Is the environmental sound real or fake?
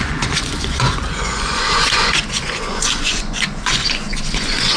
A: fake